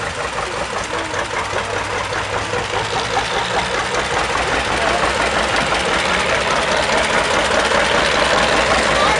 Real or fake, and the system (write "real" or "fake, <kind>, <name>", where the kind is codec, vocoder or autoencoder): real